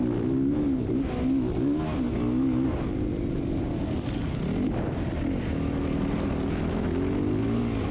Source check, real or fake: real